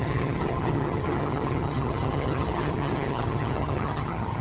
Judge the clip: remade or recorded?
remade